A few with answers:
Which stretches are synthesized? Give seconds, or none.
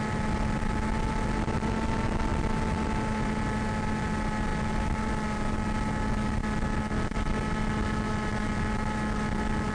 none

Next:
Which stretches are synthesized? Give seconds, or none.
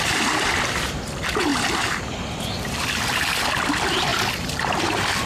none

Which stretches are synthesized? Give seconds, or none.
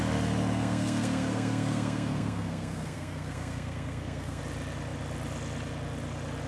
0.5-4.4 (codec, SNAC)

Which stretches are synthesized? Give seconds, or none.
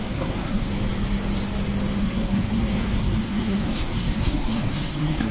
0.0-0.7 (codec, SNAC); 2.0-5.3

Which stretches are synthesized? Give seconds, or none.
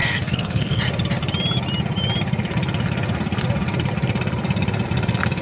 0.0-0.8 (codec, SNAC)